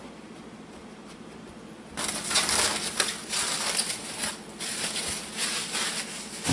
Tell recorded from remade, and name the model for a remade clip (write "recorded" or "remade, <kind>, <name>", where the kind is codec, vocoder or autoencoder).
recorded